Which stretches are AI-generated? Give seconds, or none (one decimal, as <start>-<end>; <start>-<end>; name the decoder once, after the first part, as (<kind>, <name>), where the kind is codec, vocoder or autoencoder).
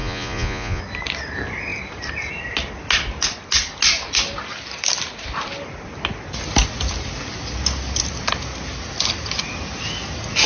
0.0-0.8 (vocoder, Vocos)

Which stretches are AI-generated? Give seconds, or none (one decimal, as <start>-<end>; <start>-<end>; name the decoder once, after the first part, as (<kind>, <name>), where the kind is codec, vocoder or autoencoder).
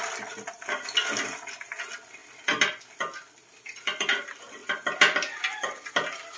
2.2-2.8 (vocoder, BigVGAN v2); 4.6-5.9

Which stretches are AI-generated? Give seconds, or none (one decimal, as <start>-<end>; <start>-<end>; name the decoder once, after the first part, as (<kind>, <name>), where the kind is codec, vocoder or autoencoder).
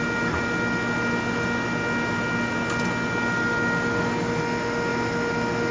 none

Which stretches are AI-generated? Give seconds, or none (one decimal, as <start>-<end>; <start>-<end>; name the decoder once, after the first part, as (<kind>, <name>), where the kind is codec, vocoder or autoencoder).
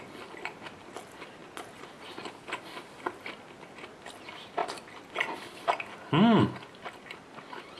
none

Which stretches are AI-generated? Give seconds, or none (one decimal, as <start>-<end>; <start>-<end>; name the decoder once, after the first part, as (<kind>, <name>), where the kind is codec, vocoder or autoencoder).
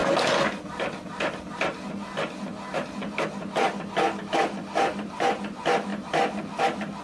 4.2-5.9 (vocoder, BigVGAN v2); 6.6-7.0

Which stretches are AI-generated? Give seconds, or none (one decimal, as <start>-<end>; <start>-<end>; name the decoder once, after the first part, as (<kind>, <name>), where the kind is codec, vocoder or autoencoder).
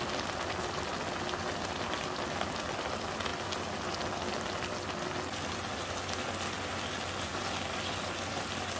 none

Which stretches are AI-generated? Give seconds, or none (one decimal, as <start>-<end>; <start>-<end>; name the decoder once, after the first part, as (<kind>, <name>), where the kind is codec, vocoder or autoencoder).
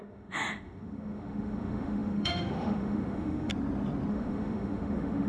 0.0-3.5 (autoencoder, DAC-VAE); 4.1-5.3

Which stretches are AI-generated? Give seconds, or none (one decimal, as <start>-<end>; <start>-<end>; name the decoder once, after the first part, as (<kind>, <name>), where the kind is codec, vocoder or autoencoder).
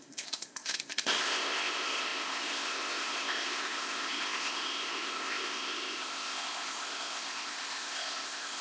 0.0-8.6 (codec, ZipCodec)